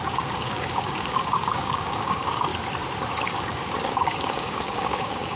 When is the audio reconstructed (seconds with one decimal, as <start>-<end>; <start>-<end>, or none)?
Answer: 0.0-2.5; 3.4-5.4